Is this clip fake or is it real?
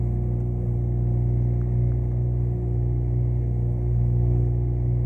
real